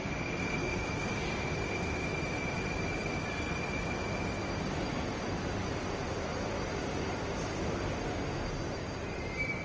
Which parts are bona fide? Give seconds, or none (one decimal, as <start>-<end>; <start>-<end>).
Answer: 0.0-0.6; 1.2-9.6